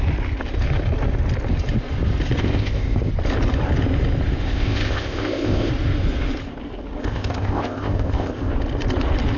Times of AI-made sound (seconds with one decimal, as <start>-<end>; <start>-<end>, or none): 2.4-3.1; 4.4-5.7; 7.0-8.5